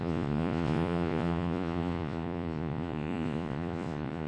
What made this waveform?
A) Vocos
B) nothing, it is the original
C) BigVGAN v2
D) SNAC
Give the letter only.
A